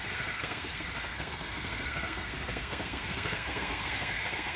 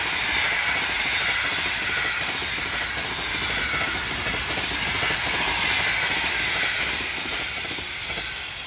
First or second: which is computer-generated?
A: first